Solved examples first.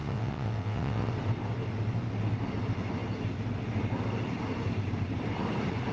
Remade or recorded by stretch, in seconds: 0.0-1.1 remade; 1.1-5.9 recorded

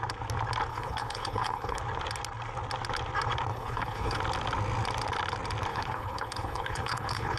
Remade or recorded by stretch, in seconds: 0.0-0.7 recorded; 0.7-1.8 remade; 1.8-3.5 recorded; 3.5-4.2 remade; 4.2-5.7 recorded; 5.7-7.4 remade

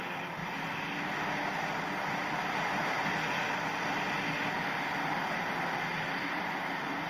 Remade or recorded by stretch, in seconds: 0.0-7.1 recorded

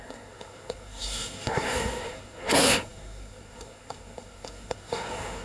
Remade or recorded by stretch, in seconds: 0.0-5.4 remade

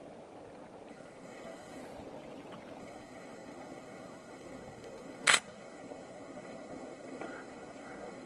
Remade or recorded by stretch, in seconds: 0.0-0.9 recorded; 0.9-1.8 remade; 1.8-2.8 recorded; 2.8-8.3 remade